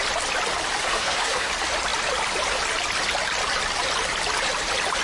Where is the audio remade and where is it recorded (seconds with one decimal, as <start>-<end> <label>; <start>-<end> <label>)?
0.0-0.8 recorded; 0.8-1.5 remade; 1.5-5.0 recorded

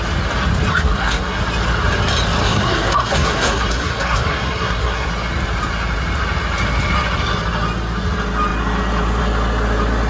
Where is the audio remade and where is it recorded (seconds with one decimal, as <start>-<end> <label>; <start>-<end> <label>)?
0.0-0.7 recorded; 0.7-1.4 remade; 1.4-2.4 recorded; 2.4-5.1 remade; 5.1-10.1 recorded